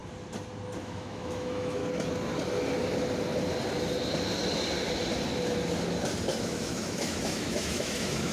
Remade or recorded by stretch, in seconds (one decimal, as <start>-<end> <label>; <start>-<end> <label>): 0.0-0.8 recorded; 0.8-1.8 remade; 1.8-6.4 recorded; 6.4-8.3 remade